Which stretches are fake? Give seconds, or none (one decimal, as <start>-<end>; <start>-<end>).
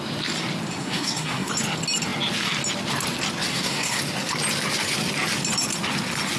0.8-1.5; 3.5-4.0